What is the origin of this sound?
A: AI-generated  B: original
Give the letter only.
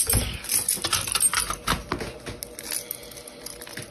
B